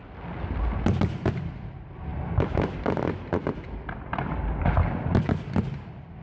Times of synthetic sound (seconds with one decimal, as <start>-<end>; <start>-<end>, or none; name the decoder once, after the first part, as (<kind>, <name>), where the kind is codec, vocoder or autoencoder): 1.1-2.1 (vocoder, BigVGAN v2); 5.8-6.2